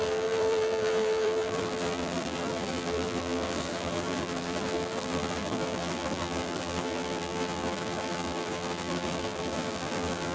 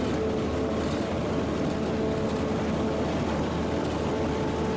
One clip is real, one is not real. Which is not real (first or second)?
first